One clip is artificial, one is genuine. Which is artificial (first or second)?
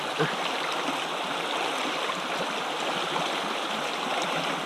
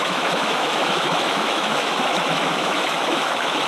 second